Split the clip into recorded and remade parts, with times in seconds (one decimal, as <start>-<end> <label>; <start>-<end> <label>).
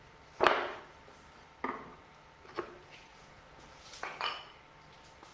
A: 0.0-3.1 recorded; 3.1-4.2 remade; 4.2-5.3 recorded